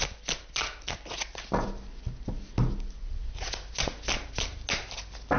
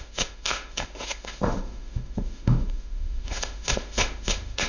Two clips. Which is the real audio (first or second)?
first